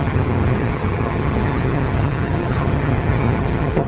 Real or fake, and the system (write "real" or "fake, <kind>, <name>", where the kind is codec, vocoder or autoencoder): fake, vocoder, HiFi-GAN